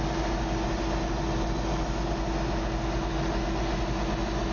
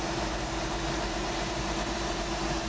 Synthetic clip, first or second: second